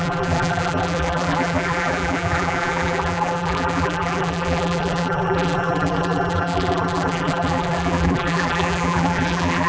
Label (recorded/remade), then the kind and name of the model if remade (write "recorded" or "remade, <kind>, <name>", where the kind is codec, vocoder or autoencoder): remade, vocoder, BigVGAN v2